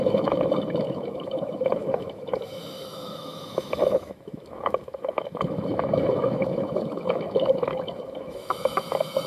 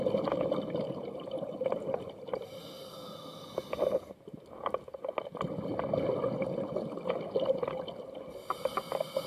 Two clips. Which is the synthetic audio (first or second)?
first